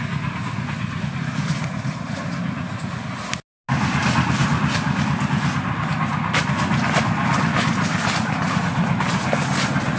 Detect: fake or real real